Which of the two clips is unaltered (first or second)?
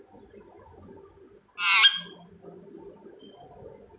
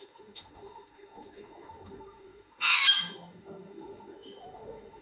first